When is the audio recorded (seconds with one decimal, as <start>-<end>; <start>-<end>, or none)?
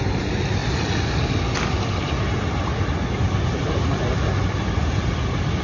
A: 0.0-5.6